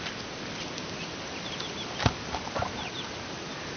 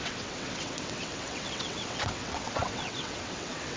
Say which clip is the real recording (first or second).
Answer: first